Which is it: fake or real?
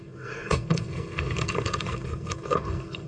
fake